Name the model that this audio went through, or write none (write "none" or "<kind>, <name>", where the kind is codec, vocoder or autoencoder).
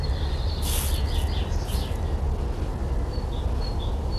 none